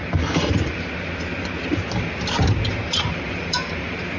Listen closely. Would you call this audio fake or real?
fake